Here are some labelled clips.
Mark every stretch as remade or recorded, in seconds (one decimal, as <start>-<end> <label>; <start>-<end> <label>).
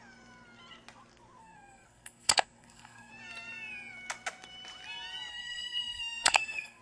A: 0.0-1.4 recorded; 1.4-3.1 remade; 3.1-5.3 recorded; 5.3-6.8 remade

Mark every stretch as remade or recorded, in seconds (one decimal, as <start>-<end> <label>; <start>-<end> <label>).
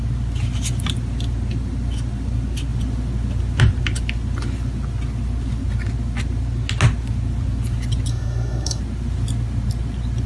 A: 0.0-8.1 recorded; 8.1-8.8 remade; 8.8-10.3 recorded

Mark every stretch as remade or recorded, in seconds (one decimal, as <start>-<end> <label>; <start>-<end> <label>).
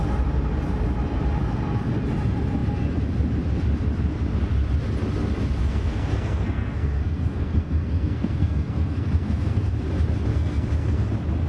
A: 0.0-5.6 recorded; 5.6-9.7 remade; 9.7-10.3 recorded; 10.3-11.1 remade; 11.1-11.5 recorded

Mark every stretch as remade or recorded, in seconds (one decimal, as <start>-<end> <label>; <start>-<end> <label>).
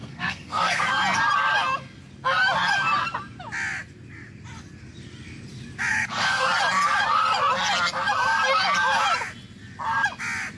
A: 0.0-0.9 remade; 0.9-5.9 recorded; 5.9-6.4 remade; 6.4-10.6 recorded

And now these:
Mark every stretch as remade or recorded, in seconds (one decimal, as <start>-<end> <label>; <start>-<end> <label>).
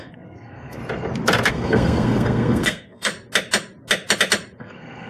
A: 0.0-0.8 remade; 0.8-1.5 recorded; 1.5-3.1 remade; 3.1-4.6 recorded; 4.6-5.1 remade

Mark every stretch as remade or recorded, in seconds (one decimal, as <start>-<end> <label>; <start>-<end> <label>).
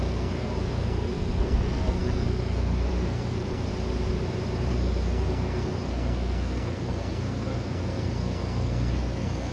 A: 0.0-3.7 remade; 3.7-4.7 recorded; 4.7-9.5 remade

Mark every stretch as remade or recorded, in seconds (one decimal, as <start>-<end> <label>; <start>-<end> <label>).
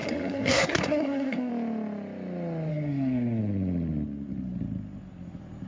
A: 0.0-1.5 remade; 1.5-2.7 recorded; 2.7-3.4 remade; 3.4-5.7 recorded